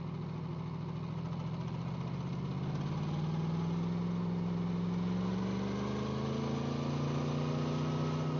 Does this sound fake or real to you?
real